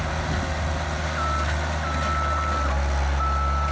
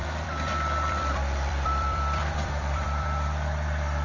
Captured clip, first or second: first